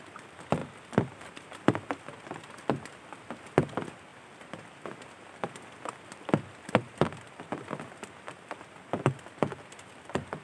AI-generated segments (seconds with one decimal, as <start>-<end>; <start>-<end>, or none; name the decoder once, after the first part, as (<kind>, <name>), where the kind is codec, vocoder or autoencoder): none